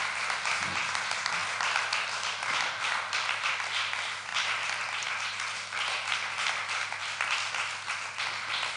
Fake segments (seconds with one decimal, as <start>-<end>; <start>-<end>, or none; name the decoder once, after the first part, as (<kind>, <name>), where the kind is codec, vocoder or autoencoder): 1.4-3.8 (vocoder, BigVGAN v2); 7.0-7.5